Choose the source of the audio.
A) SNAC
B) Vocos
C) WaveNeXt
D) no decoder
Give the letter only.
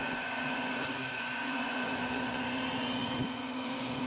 B